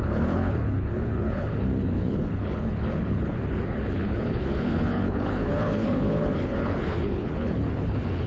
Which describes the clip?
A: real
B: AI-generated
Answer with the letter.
B